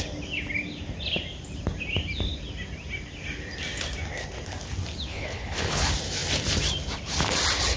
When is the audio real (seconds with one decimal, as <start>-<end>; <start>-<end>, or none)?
0.0-5.1; 5.8-7.8

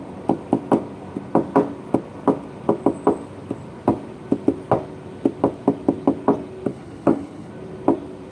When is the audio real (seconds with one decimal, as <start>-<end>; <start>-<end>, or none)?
0.0-6.7; 7.5-8.3

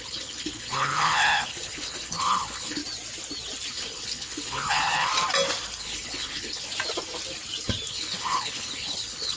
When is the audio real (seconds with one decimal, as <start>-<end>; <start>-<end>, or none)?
2.8-3.7; 5.1-5.8; 6.7-7.9

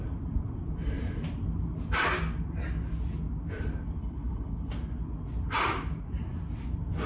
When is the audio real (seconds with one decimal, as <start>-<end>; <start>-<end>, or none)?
0.0-4.0; 4.7-7.1

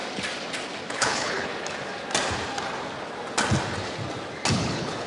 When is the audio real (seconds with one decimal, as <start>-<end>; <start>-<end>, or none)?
0.0-0.9; 1.5-4.5